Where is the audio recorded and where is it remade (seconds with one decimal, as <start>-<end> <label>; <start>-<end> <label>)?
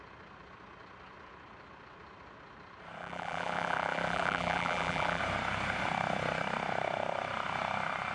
0.0-3.0 recorded; 3.0-5.2 remade; 5.2-8.1 recorded